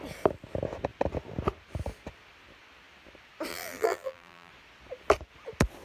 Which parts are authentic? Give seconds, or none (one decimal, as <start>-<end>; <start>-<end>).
0.0-3.5; 4.5-5.8